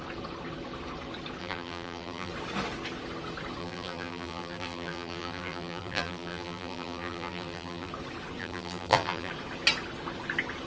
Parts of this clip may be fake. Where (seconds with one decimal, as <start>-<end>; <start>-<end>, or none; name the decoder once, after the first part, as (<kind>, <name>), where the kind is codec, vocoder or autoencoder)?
1.4-2.3 (vocoder, BigVGAN v2); 3.6-7.9; 8.4-9.3